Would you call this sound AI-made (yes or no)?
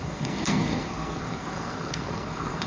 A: yes